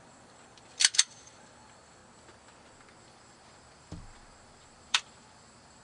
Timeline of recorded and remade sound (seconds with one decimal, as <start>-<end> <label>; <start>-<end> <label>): 0.0-2.0 remade; 2.0-3.0 recorded; 3.0-5.8 remade